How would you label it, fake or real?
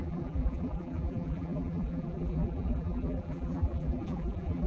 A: fake